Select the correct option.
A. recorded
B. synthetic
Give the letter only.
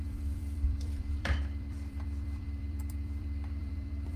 B